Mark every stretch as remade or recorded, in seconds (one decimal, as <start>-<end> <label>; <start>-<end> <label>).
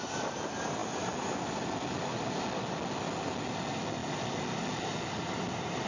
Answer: 0.0-5.9 recorded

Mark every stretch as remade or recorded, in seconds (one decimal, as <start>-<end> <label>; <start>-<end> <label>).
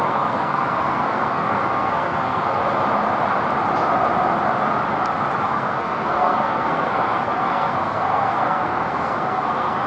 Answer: 0.0-2.6 remade; 2.6-5.4 recorded; 5.4-9.9 remade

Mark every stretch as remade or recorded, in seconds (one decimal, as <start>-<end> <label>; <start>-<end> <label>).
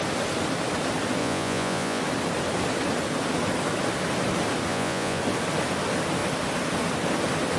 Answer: 0.0-1.2 recorded; 1.2-2.0 remade; 2.0-4.7 recorded; 4.7-5.2 remade; 5.2-7.6 recorded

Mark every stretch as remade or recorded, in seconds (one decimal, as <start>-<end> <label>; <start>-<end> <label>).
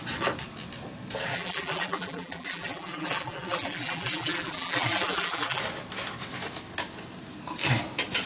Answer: 0.0-1.3 recorded; 1.3-5.6 remade; 5.6-8.3 recorded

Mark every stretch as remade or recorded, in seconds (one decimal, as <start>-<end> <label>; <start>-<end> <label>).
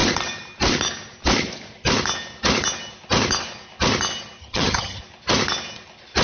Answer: 0.0-4.4 recorded; 4.4-5.0 remade; 5.0-6.2 recorded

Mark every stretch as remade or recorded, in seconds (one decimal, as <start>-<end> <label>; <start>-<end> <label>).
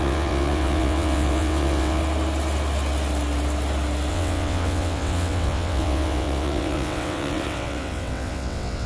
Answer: 0.0-2.0 remade; 2.0-4.1 recorded; 4.1-8.9 remade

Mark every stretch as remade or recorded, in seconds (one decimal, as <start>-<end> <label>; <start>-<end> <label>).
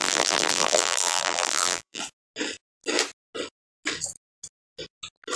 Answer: 0.0-2.0 remade; 2.0-5.4 recorded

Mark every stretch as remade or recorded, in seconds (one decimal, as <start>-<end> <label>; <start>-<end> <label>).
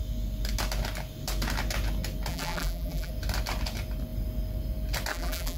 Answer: 0.0-2.3 recorded; 2.3-3.1 remade; 3.1-5.1 recorded; 5.1-5.6 remade